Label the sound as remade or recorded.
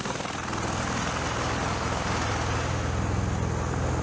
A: recorded